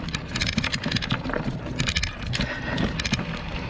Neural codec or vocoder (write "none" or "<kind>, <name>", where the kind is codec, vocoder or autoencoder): none